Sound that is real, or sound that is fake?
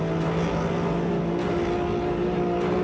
real